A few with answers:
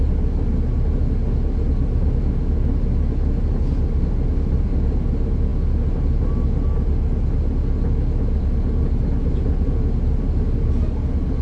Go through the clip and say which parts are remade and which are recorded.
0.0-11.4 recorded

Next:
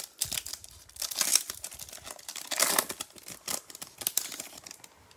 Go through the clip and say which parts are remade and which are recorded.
0.0-5.2 recorded

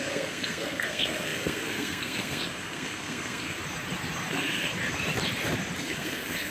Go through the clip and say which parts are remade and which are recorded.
0.0-3.6 remade; 3.6-4.3 recorded; 4.3-4.7 remade; 4.7-5.8 recorded; 5.8-6.5 remade

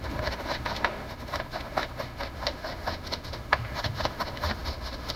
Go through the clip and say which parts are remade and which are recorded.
0.0-5.2 remade

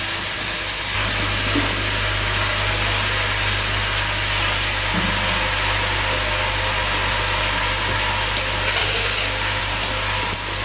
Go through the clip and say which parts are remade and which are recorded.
0.0-8.8 recorded; 8.8-9.6 remade; 9.6-10.6 recorded

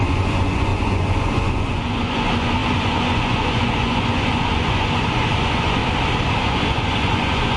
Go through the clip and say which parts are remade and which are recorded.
0.0-5.8 remade; 5.8-6.4 recorded; 6.4-7.6 remade